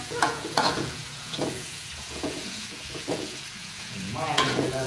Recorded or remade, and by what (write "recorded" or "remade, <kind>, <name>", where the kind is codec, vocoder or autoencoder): remade, vocoder, Vocos